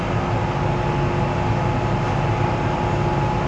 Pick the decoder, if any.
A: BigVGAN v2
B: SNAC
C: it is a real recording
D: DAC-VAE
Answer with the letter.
C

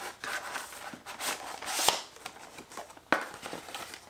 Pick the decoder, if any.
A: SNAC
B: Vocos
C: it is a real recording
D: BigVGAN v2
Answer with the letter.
C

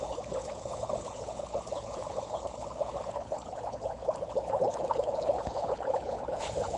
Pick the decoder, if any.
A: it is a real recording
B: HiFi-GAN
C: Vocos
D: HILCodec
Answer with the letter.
D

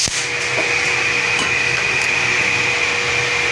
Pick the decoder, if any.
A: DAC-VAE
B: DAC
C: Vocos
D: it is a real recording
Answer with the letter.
D